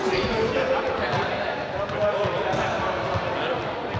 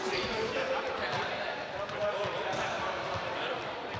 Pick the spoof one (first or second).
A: second